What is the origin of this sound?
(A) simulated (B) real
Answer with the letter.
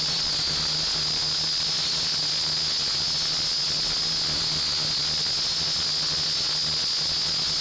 B